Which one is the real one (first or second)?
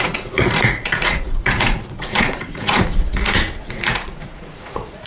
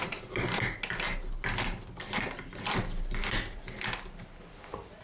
second